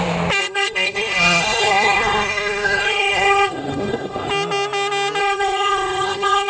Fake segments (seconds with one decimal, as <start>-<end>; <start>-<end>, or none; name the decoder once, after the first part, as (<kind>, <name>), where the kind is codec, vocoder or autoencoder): 0.4-4.3 (codec, SNAC); 5.2-6.5